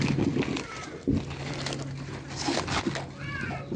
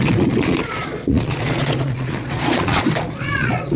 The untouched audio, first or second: first